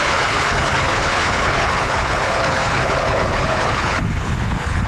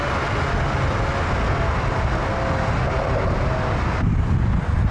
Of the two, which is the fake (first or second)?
first